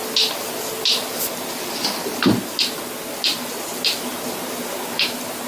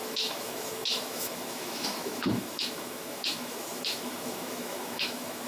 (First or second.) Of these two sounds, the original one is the first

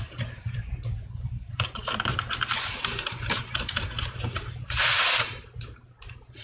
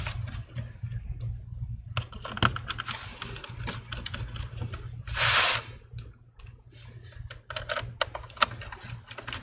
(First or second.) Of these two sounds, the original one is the second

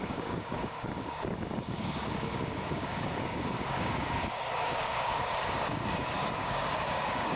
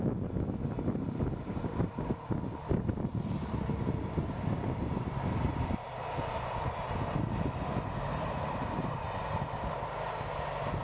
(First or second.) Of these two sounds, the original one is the second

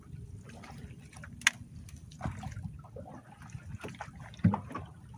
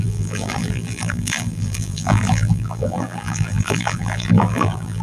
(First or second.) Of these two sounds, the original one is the first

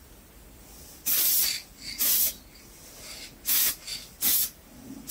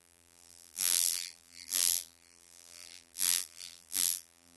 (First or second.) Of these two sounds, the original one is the first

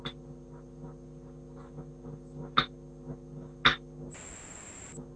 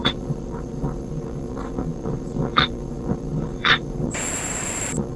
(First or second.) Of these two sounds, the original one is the first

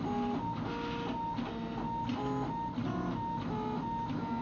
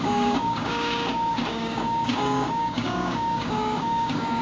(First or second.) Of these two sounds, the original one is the first